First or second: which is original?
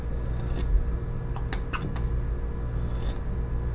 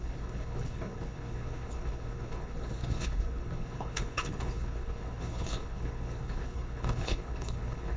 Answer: first